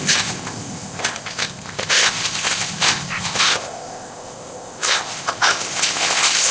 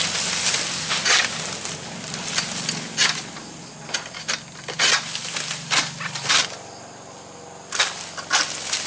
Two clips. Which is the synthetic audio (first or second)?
first